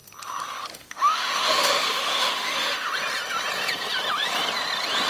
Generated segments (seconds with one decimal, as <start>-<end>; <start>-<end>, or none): 0.7-2.9